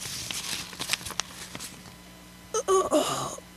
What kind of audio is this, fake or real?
real